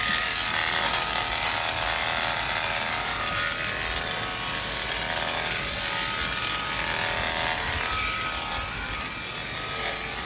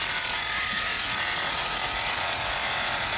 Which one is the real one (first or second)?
first